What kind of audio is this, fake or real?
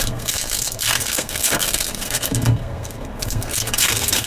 fake